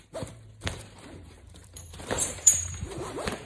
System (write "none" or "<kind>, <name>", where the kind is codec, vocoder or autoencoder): vocoder, BigVGAN v2